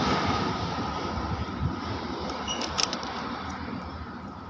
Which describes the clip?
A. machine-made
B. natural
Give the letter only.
A